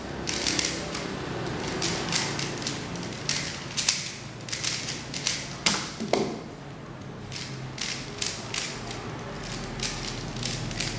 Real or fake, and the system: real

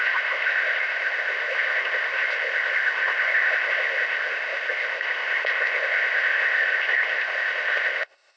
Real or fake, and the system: fake, codec, ZipCodec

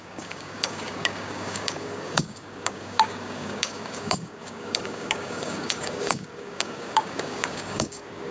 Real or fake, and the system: fake, codec, DAC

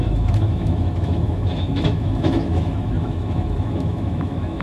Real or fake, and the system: fake, autoencoder, DAC-VAE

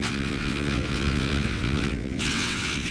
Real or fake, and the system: fake, vocoder, WaveNeXt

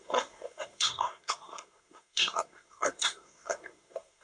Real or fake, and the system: fake, codec, SNAC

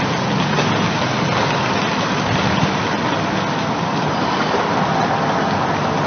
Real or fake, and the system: real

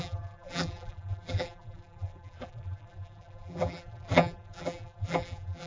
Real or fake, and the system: fake, vocoder, BigVGAN v2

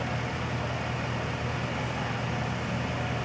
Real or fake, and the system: real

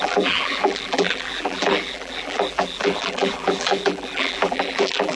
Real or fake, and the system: fake, vocoder, BigVGAN v2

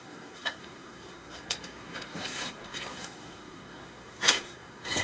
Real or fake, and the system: fake, codec, SNAC